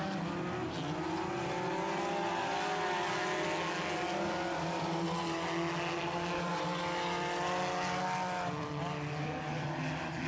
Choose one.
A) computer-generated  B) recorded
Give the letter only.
B